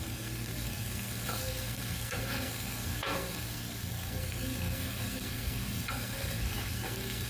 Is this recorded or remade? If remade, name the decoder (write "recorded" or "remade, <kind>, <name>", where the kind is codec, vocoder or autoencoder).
remade, codec, SNAC